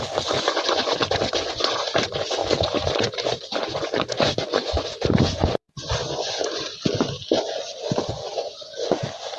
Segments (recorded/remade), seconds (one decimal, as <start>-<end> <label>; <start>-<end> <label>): 0.0-2.4 remade; 2.4-3.0 recorded; 3.0-6.7 remade; 6.7-8.1 recorded; 8.1-9.4 remade